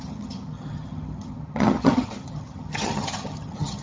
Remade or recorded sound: remade